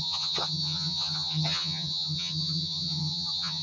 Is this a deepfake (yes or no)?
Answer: yes